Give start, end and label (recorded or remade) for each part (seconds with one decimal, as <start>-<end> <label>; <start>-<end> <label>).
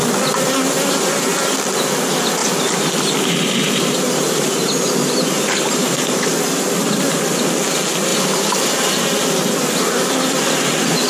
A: 0.0-2.4 recorded; 2.4-2.9 remade; 2.9-3.6 recorded; 3.6-6.3 remade; 6.3-8.1 recorded; 8.1-9.1 remade; 9.1-11.1 recorded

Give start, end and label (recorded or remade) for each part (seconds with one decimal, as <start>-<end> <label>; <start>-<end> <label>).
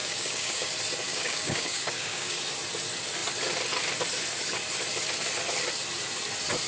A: 0.0-0.7 remade; 0.7-1.1 recorded; 1.1-2.4 remade; 2.4-6.7 recorded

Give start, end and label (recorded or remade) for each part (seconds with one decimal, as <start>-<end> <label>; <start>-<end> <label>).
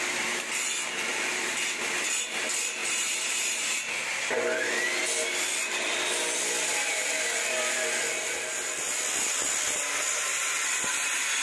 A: 0.0-1.1 recorded; 1.1-1.7 remade; 1.7-2.8 recorded; 2.8-3.8 remade; 3.8-11.4 recorded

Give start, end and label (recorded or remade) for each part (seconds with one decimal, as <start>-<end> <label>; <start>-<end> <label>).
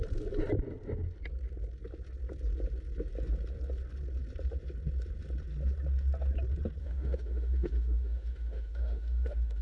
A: 0.0-6.8 recorded; 6.8-9.6 remade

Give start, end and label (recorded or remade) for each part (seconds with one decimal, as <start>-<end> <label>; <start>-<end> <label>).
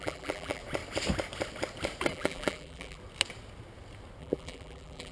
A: 0.0-0.6 remade; 0.6-2.1 recorded; 2.1-3.0 remade; 3.0-4.2 recorded; 4.2-5.1 remade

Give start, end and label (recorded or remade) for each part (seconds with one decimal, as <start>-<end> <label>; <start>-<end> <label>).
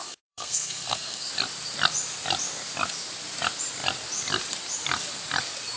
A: 0.0-1.3 remade; 1.3-5.8 recorded